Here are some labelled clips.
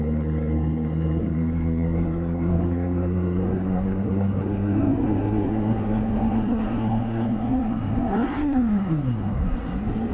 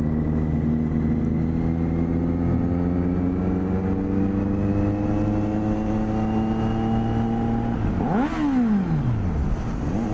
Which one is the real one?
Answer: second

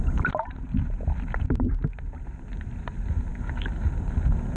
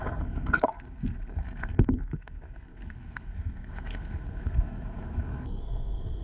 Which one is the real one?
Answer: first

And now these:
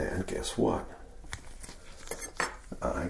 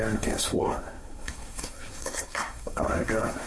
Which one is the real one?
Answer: first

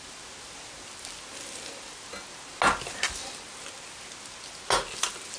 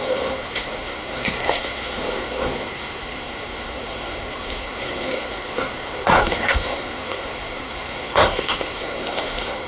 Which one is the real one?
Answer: first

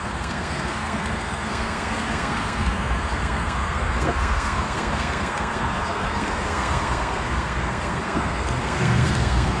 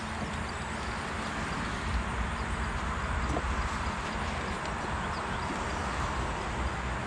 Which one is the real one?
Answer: second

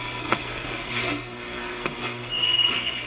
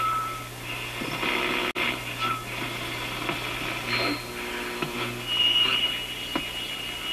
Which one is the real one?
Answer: second